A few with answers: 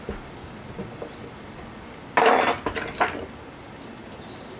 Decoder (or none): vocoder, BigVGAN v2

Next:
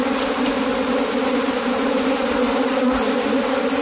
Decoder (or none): none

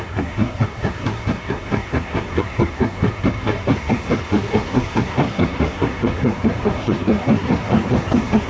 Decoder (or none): codec, SNAC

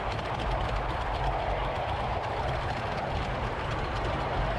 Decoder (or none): none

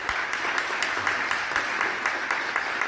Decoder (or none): none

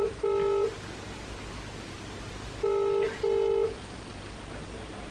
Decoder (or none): none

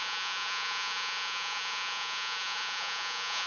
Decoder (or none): vocoder, Vocos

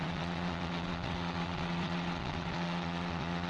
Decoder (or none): vocoder, WaveNeXt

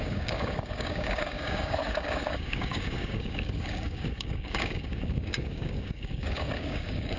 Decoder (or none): codec, DAC